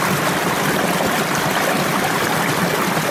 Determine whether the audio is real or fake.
real